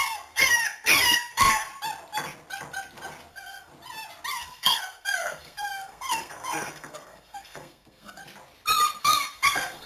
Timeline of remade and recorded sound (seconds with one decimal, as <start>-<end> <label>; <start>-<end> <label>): 0.0-1.7 remade; 1.7-3.3 recorded; 3.3-3.7 remade; 3.7-4.3 recorded; 4.3-8.2 remade; 8.2-9.0 recorded; 9.0-9.9 remade